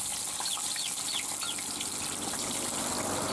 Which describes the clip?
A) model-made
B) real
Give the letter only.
B